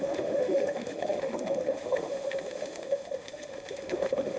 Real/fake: fake